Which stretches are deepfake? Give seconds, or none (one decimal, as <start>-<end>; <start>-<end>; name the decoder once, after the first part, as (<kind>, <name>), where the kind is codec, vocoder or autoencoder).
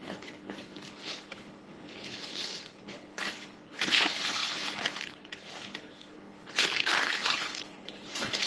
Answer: 0.0-8.5 (codec, HILCodec)